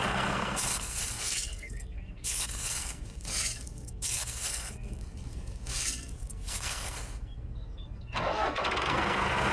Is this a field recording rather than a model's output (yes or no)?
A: no